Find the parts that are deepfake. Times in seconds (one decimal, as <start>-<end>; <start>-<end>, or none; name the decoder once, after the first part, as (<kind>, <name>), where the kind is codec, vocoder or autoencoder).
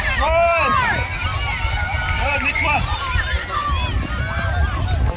1.3-4.2 (vocoder, BigVGAN v2)